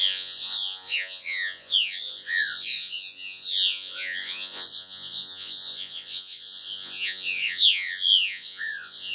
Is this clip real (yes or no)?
no